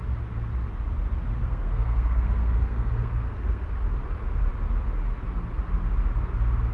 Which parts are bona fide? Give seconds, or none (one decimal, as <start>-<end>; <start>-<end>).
0.0-1.4; 3.7-6.7